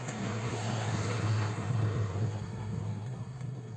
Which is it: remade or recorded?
remade